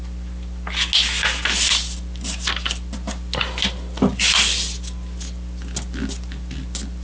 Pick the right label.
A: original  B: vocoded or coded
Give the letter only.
A